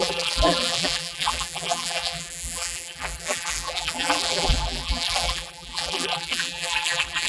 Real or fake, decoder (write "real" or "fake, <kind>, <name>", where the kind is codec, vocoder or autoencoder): fake, vocoder, BigVGAN v2